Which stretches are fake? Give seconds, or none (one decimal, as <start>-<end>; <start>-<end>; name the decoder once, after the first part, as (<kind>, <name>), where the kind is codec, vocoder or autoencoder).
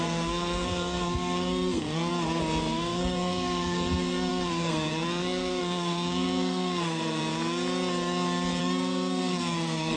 0.0-2.1 (codec, SNAC); 2.6-7.2; 8.6-10.0